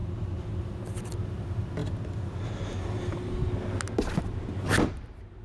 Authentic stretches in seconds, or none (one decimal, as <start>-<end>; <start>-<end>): 0.0-0.6; 1.8-2.8; 3.4-4.6